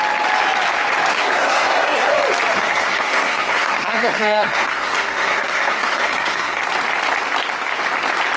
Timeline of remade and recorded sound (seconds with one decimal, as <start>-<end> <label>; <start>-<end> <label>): 0.0-1.1 recorded; 1.1-2.1 remade; 2.1-2.6 recorded; 2.6-6.6 remade; 6.6-8.4 recorded